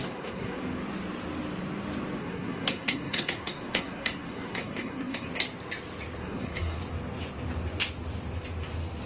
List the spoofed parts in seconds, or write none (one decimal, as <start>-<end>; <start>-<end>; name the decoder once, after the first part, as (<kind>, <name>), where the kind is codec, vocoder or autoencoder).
0.0-0.6 (codec, SNAC); 2.2-5.3; 6.2-6.8